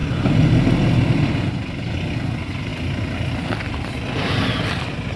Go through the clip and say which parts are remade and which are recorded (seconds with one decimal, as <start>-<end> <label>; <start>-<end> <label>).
0.0-5.2 recorded